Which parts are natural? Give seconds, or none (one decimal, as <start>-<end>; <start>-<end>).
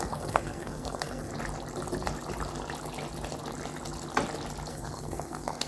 1.3-4.7